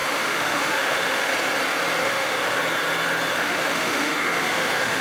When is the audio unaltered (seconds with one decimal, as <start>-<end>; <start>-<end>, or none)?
1.3-2.0; 2.6-3.3